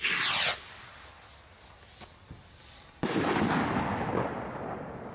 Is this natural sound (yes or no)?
yes